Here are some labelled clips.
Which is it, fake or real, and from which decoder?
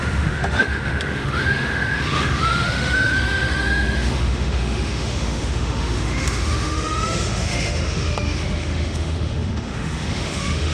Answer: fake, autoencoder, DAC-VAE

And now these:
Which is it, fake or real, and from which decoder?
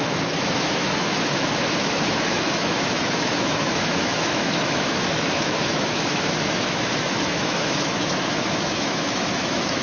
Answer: fake, autoencoder, DAC-VAE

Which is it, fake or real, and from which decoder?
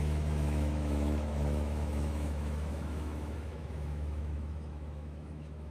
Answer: fake, autoencoder, DAC-VAE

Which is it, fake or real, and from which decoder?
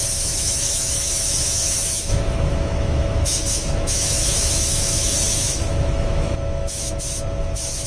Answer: fake, autoencoder, DAC-VAE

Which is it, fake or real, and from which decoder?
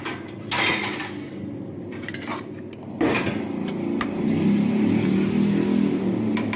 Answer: real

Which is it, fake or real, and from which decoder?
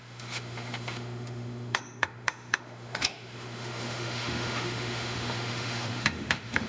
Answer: fake, autoencoder, DAC-VAE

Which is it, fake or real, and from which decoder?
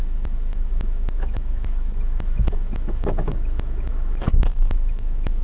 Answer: fake, autoencoder, DAC-VAE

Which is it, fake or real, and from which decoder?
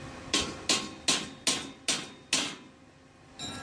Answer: real